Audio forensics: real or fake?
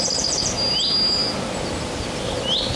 real